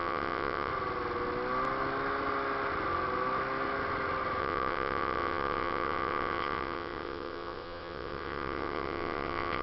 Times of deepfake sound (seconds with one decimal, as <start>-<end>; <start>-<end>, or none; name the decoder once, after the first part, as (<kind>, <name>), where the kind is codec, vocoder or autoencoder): 0.0-0.7 (vocoder, WaveNeXt); 4.4-9.6